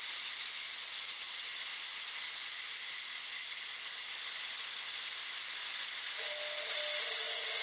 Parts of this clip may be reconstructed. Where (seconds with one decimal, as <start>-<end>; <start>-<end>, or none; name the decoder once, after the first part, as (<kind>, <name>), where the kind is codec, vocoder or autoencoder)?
none

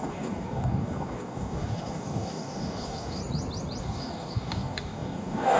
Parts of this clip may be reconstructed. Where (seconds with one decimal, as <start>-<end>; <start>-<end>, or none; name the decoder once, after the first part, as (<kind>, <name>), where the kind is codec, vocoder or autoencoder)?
0.0-3.2 (codec, DAC); 3.8-5.6

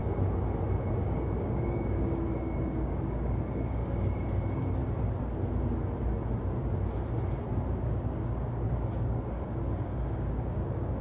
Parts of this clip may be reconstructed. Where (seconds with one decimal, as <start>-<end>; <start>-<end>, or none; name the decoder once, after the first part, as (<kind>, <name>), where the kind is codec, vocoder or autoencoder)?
1.0-4.8 (codec, DAC); 7.8-11.0

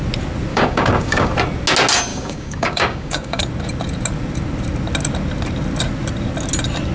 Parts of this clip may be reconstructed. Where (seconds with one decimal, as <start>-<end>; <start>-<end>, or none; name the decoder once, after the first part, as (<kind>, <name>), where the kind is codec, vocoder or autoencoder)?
0.5-1.3 (codec, DAC); 2.1-3.4

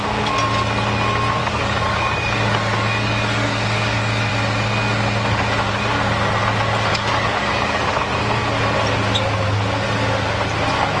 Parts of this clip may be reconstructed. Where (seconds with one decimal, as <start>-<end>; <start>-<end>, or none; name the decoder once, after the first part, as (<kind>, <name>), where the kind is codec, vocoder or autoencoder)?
1.4-4.3 (codec, DAC); 6.9-8.1

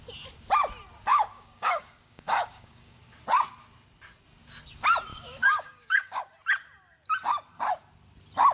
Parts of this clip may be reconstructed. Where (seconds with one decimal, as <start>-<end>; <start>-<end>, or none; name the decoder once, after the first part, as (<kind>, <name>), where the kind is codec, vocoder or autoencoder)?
1.1-3.0 (codec, DAC); 5.1-6.2